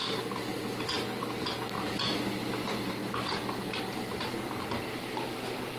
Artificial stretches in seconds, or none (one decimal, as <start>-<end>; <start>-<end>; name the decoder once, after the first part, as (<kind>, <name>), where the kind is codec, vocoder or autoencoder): 1.9-4.3 (vocoder, BigVGAN v2); 4.9-5.8